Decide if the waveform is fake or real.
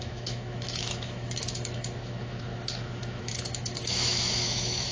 fake